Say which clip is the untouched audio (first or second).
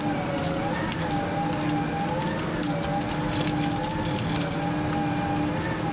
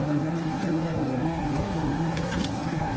first